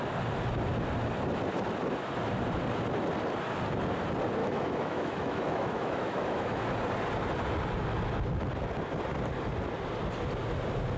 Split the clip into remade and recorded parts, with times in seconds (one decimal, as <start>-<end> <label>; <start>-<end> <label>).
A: 0.0-4.4 recorded; 4.4-6.6 remade; 6.6-11.0 recorded